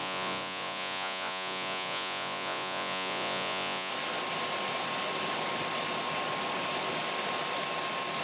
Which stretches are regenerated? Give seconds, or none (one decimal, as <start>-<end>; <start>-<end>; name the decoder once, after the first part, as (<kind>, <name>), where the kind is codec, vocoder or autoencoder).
0.0-3.9 (vocoder, Vocos)